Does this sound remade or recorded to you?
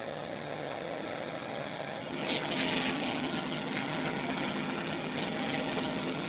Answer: remade